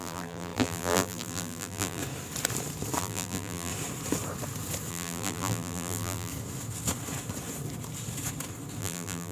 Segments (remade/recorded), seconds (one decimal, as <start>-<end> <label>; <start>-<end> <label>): 0.0-2.0 remade; 2.0-3.0 recorded; 3.0-3.7 remade; 3.7-4.9 recorded; 4.9-6.3 remade; 6.3-8.8 recorded; 8.8-9.3 remade